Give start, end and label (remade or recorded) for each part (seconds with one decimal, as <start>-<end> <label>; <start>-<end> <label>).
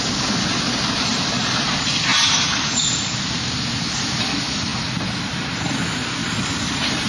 0.0-2.1 recorded; 2.1-3.6 remade; 3.6-6.2 recorded; 6.2-7.1 remade